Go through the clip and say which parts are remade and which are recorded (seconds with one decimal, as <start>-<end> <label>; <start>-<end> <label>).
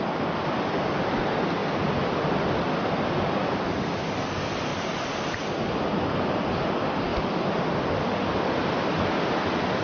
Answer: 0.0-1.6 recorded; 1.6-2.7 remade; 2.7-9.8 recorded